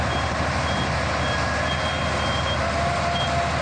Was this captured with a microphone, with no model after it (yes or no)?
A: yes